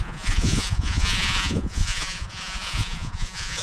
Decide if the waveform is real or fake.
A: fake